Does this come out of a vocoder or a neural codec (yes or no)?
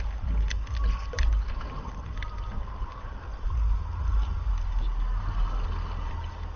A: no